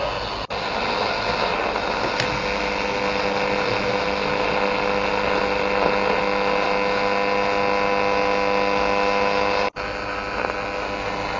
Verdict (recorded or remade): recorded